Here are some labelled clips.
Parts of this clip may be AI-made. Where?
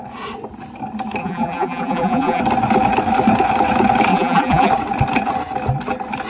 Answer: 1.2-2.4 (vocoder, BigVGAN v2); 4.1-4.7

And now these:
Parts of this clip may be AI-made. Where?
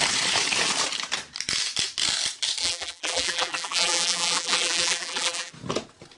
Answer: 2.6-5.5 (vocoder, BigVGAN v2)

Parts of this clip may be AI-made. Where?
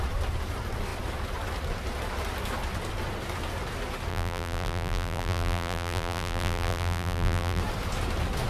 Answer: 4.1-7.6 (vocoder, BigVGAN v2)